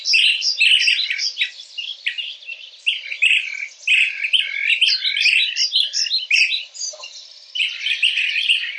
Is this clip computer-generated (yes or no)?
no